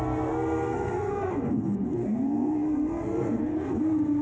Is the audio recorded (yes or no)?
no